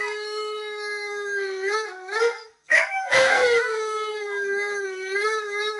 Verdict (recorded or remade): remade